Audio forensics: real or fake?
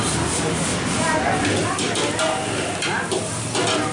real